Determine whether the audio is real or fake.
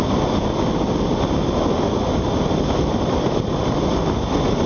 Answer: real